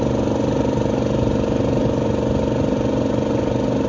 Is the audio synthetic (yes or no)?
no